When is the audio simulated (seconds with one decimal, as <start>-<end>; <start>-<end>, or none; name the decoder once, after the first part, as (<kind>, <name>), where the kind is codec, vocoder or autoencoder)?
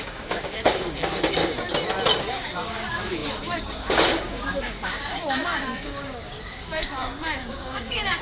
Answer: 0.0-1.4 (codec, DAC); 2.2-8.2